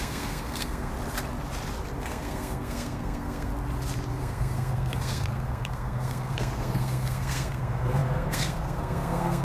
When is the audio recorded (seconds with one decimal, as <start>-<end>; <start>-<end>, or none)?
0.9-2.1; 3.5-4.1

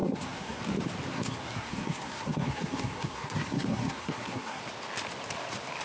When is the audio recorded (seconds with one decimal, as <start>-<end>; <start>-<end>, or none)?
0.6-1.1; 4.6-5.8

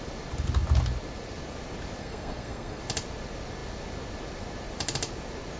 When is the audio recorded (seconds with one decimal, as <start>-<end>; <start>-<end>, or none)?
0.0-2.0; 2.8-5.6

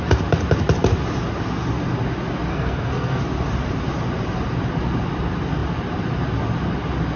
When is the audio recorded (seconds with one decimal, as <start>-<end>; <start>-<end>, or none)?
0.0-2.5; 3.2-7.2

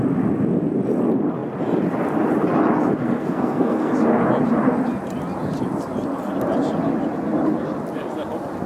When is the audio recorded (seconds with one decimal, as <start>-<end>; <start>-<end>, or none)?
0.0-3.0; 3.9-8.7

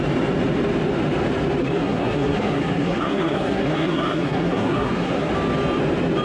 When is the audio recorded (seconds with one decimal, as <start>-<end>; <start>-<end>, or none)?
0.0-1.6; 5.3-6.2

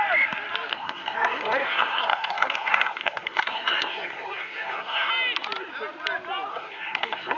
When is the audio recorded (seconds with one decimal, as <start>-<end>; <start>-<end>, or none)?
0.0-0.7; 5.1-6.5